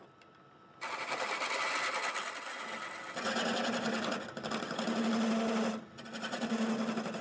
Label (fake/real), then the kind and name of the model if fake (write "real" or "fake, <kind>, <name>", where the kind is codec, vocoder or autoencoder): real